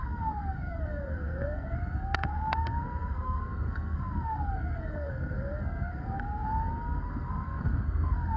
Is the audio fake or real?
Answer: fake